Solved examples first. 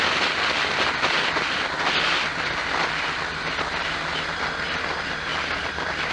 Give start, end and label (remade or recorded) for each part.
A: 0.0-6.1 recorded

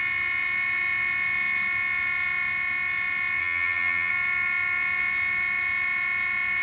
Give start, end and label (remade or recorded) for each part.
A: 0.0-3.4 recorded; 3.4-4.1 remade; 4.1-6.6 recorded

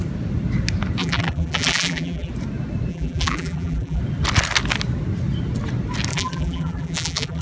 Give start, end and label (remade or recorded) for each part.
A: 0.0-1.0 recorded; 1.0-2.3 remade; 2.3-2.9 recorded; 2.9-4.0 remade; 4.0-6.1 recorded; 6.1-7.4 remade

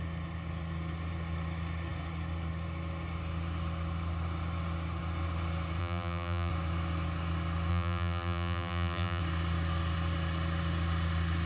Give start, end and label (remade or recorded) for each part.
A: 0.0-5.8 recorded; 5.8-6.5 remade; 6.5-7.7 recorded; 7.7-9.2 remade; 9.2-11.5 recorded

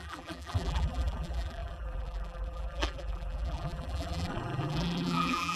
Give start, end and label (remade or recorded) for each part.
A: 0.0-5.6 remade